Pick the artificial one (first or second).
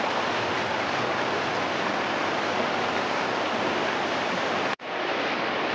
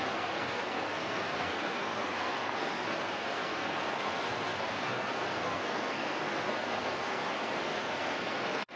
second